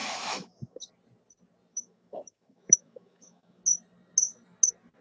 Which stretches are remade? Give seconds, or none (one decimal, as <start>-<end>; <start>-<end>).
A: 0.0-0.8; 1.7-3.6